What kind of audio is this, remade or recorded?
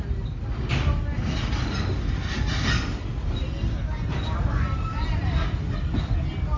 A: recorded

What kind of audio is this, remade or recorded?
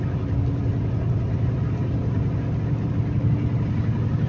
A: recorded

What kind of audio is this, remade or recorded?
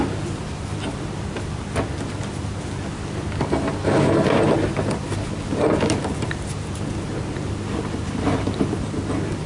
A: recorded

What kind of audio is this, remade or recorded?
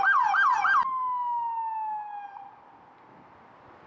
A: recorded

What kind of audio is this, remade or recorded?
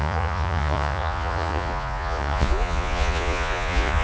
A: remade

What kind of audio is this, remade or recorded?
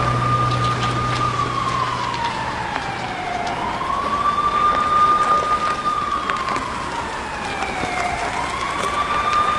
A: recorded